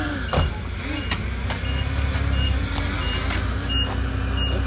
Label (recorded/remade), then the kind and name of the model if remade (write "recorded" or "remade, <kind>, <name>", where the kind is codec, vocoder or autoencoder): recorded